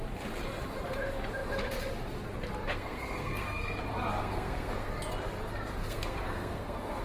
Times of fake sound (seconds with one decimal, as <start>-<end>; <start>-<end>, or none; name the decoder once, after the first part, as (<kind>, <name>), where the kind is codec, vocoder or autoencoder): 2.7-3.8 (codec, SNAC); 4.2-4.9; 5.8-7.0